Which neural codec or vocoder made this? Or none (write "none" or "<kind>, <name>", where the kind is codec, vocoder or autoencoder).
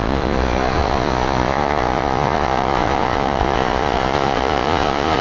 vocoder, Vocos